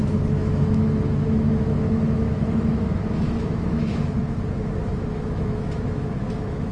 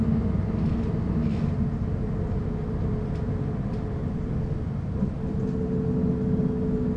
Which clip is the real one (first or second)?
second